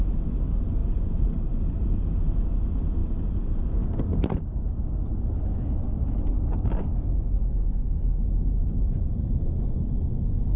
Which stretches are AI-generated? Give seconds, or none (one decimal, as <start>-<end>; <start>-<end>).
0.8-2.1; 3.0-3.7; 8.6-9.4